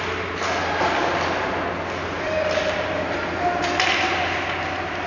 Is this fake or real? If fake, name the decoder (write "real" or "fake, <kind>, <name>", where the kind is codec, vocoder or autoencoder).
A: real